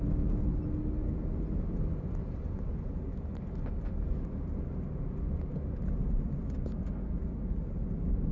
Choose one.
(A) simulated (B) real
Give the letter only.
B